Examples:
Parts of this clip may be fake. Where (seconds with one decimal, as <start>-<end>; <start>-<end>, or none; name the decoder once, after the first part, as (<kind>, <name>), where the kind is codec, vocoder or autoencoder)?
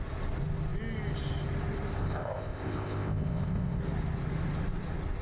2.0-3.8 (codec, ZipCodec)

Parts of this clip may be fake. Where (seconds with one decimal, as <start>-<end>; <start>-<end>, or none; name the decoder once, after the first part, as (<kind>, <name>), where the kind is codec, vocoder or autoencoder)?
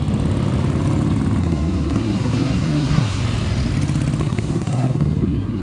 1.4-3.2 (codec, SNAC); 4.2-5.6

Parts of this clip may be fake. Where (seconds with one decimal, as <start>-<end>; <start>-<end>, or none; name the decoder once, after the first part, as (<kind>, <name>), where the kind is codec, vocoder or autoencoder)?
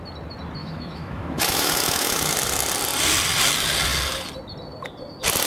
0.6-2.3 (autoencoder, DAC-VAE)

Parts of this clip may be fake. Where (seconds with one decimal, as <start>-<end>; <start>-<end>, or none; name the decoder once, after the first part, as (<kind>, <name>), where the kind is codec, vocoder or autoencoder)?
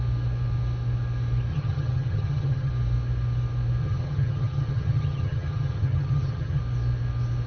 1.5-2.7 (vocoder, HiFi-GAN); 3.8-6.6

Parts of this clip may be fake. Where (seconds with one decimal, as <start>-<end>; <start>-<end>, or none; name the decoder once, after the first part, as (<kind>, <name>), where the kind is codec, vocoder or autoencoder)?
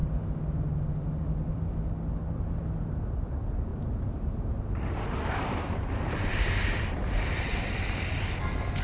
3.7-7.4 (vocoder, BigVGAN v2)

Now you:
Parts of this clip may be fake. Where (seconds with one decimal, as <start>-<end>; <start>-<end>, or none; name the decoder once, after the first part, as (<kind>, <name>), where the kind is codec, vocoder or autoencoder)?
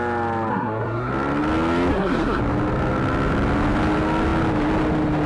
0.5-1.1 (codec, SNAC); 1.9-2.4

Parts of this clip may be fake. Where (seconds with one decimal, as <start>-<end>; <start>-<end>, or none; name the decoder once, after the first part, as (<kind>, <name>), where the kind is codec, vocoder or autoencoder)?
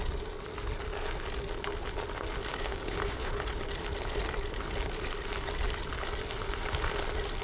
2.5-3.3 (codec, DAC)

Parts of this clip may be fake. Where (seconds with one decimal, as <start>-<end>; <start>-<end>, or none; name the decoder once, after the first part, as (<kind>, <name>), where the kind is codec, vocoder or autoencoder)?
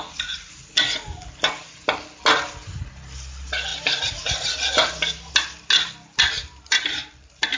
3.7-5.3 (vocoder, BigVGAN v2)